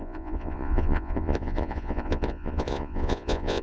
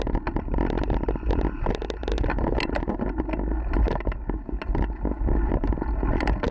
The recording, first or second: second